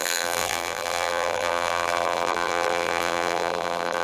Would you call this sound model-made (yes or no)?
yes